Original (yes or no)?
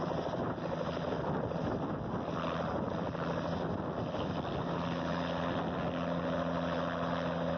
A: yes